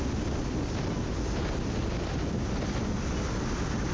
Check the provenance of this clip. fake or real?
real